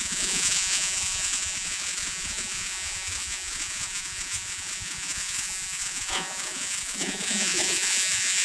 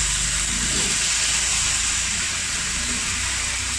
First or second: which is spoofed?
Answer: first